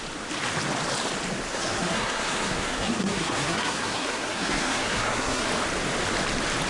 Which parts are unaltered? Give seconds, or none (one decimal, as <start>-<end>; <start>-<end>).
0.0-1.5; 5.5-6.7